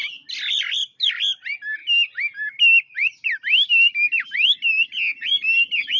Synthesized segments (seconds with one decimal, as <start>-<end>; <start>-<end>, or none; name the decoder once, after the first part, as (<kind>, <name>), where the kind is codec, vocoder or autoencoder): none